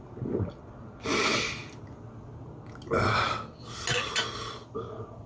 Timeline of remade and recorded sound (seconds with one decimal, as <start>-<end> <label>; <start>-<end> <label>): 0.0-5.3 recorded